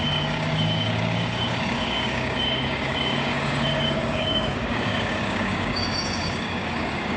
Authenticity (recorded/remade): remade